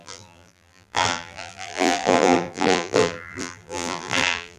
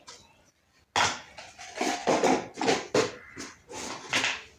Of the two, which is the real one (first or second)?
second